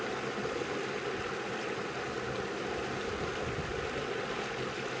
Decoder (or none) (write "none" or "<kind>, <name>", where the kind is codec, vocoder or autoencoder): none